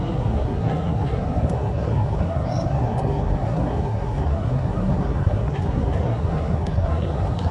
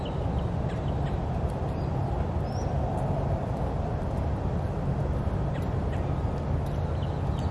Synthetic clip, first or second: first